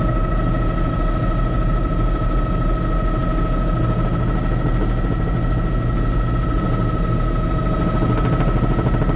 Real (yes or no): yes